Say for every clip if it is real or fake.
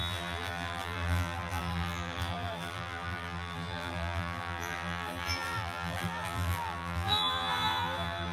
fake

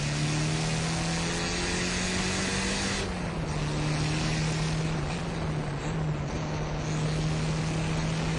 real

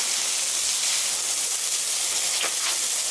real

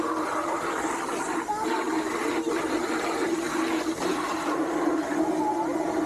real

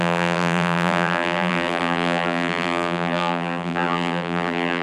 fake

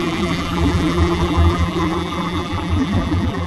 fake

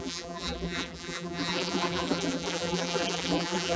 fake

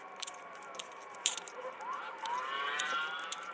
fake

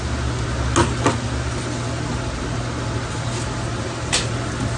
real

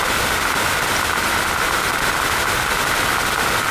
real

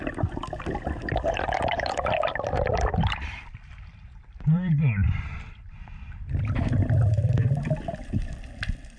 fake